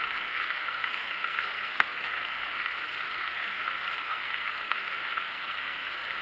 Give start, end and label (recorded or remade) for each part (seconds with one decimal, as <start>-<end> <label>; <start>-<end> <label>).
0.0-6.2 remade